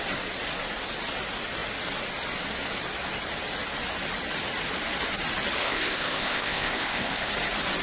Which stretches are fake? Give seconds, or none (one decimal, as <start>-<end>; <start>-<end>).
5.6-7.3